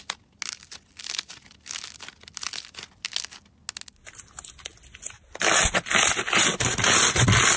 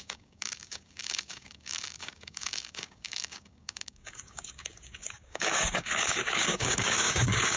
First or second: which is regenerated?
second